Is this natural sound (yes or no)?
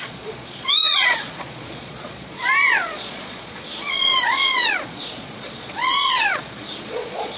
no